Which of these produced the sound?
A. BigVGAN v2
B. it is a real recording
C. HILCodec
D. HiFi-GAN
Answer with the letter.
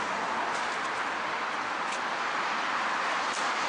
A